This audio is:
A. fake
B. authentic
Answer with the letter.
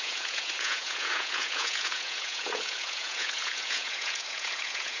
A